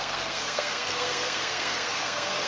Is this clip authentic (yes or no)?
no